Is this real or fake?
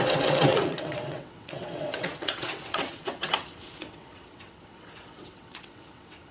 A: fake